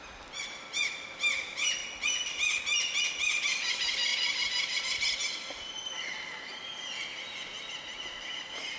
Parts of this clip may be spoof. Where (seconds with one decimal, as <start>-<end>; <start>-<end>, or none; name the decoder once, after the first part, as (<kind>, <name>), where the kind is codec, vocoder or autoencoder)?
0.0-1.8 (vocoder, BigVGAN v2); 3.1-4.1; 4.8-8.8